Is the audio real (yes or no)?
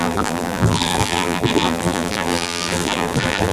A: no